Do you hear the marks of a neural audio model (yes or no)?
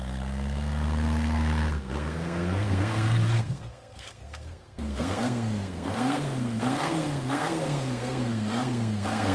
yes